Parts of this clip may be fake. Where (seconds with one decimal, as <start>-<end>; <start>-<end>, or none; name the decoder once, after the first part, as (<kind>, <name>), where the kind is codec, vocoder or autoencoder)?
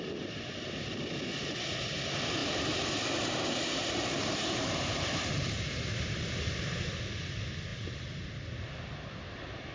2.4-7.0 (vocoder, BigVGAN v2); 7.7-8.2